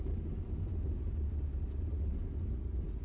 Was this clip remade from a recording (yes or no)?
no